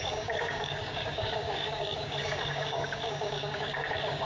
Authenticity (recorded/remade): remade